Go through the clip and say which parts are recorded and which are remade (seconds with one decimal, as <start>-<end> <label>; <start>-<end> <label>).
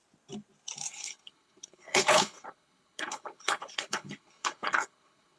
0.0-0.9 recorded; 0.9-5.4 remade